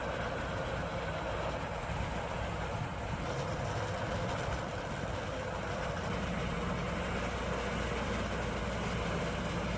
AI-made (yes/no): no